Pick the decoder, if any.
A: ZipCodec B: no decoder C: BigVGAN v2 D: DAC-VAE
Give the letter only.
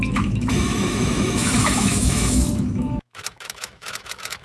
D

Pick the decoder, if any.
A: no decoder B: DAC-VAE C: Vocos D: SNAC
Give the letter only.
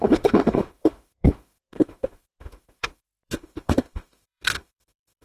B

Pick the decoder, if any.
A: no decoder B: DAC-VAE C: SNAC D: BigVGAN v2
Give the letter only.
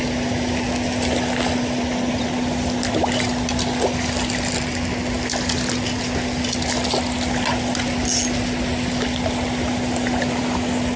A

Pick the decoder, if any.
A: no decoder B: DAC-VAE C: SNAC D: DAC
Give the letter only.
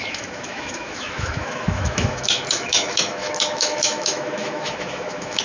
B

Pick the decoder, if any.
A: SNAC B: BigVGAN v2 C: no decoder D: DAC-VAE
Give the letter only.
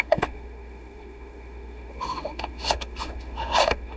D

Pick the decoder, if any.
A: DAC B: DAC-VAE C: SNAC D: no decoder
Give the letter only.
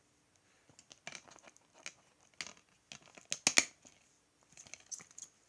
D